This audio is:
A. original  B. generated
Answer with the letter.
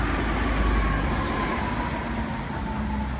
A